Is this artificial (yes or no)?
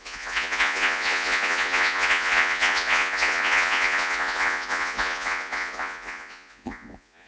yes